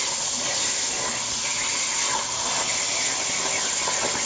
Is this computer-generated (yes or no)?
no